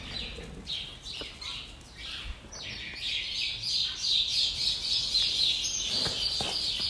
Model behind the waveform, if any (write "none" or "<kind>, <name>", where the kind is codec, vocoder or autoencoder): none